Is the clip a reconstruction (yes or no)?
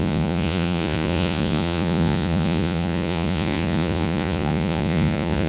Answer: yes